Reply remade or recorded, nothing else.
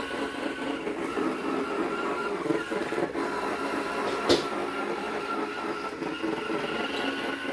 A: recorded